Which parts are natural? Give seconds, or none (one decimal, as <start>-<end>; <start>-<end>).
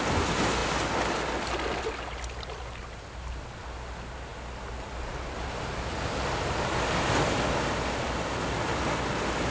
0.0-9.5